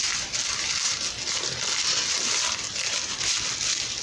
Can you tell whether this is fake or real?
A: real